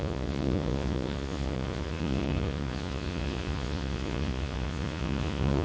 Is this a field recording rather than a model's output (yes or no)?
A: no